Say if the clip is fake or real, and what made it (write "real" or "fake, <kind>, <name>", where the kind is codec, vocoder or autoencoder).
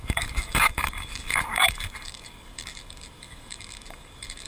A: fake, codec, DAC